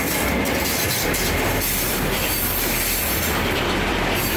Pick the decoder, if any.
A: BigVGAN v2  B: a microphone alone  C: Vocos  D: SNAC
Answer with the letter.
A